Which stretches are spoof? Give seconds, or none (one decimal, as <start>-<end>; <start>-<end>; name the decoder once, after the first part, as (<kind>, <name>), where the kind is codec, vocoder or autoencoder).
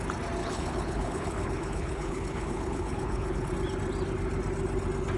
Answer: 0.4-3.5 (codec, HILCodec)